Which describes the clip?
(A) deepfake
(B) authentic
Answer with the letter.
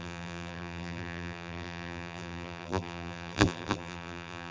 A